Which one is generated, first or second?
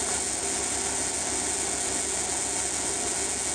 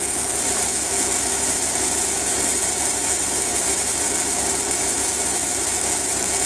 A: second